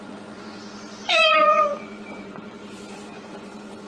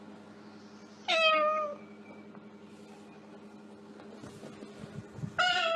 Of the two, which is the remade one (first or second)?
first